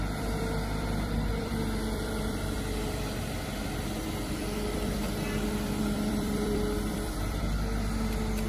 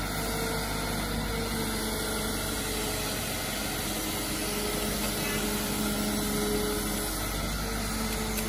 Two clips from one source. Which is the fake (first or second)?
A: first